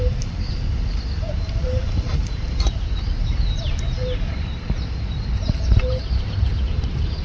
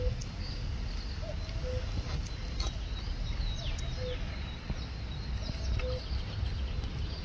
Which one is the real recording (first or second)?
second